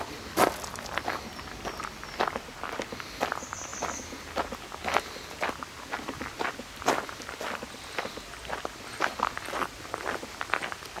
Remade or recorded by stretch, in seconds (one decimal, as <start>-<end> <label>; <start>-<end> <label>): 0.0-11.0 recorded